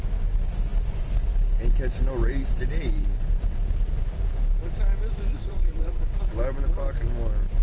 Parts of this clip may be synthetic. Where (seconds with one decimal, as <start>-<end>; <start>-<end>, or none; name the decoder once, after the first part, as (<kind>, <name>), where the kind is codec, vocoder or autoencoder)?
5.4-6.0 (vocoder, WaveNeXt)